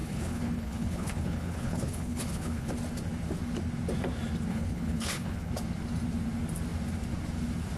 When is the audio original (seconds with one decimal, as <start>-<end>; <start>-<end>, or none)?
2.7-4.5; 5.5-7.8